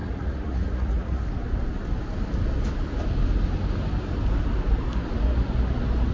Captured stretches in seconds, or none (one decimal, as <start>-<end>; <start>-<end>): 1.2-6.1